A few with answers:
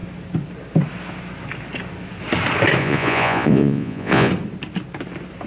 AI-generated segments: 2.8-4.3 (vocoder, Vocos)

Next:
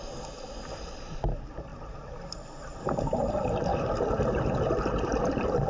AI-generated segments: 0.0-1.7 (vocoder, BigVGAN v2); 3.3-3.7; 4.8-5.7

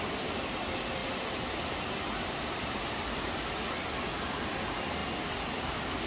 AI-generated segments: none

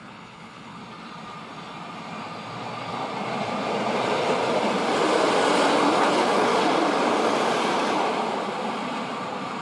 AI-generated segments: 0.0-0.8 (codec, HILCodec); 6.0-6.5

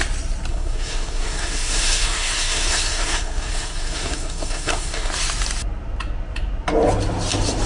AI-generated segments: 0.5-5.1 (codec, SNAC)

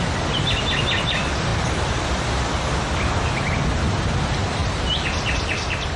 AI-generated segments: none

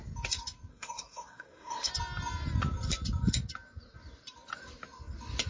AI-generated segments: 0.7-1.9 (codec, SNAC)

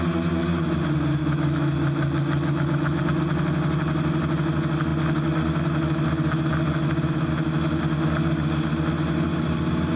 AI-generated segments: 1.2-3.0 (autoencoder, DAC-VAE)